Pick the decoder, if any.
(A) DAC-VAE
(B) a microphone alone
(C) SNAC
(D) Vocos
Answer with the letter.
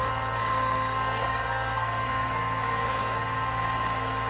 C